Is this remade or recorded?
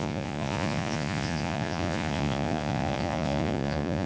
remade